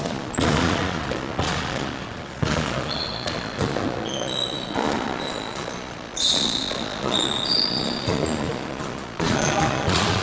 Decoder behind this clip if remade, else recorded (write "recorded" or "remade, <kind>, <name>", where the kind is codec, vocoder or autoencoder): remade, vocoder, Vocos